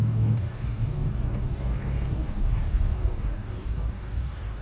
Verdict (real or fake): fake